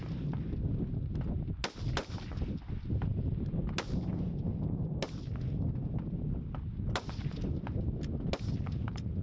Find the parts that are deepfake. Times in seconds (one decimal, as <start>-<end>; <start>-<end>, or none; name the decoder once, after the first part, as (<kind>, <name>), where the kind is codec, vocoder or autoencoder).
none